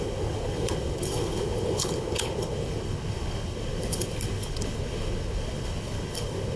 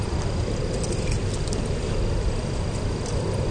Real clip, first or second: second